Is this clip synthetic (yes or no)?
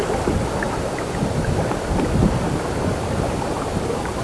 no